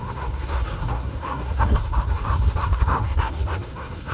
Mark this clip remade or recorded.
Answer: remade